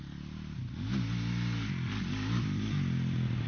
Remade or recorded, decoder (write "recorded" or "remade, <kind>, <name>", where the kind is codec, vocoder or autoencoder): recorded